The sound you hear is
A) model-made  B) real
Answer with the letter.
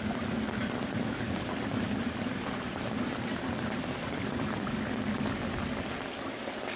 B